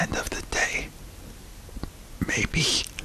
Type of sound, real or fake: real